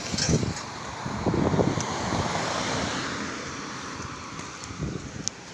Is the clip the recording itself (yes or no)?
yes